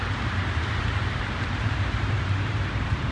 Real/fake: fake